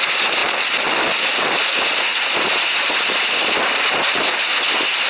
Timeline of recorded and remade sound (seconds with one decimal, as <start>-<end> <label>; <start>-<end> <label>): 0.0-5.1 recorded